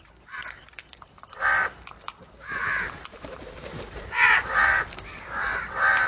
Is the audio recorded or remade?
remade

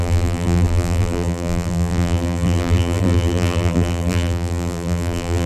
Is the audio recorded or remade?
remade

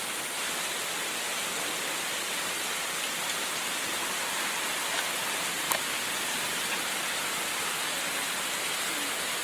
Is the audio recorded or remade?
recorded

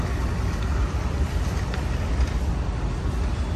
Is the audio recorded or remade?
recorded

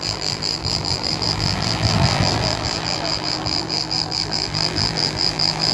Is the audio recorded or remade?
remade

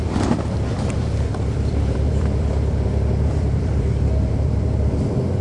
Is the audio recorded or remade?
remade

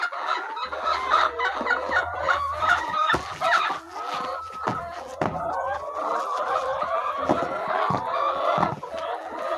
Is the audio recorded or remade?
remade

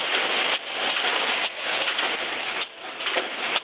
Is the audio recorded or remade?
recorded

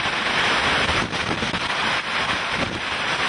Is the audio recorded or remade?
recorded